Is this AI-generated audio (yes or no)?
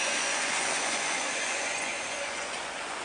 yes